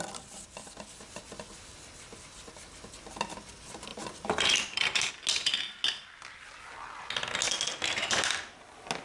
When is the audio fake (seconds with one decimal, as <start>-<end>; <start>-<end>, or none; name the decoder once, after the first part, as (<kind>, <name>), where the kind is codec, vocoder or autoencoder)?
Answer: 3.9-5.1 (vocoder, BigVGAN v2)